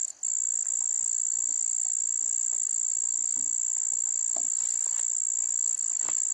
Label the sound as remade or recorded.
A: recorded